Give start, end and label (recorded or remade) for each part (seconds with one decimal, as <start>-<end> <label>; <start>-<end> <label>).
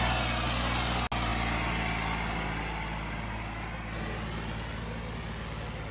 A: 0.0-5.9 recorded